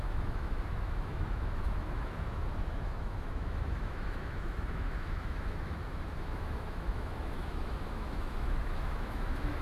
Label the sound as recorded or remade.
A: remade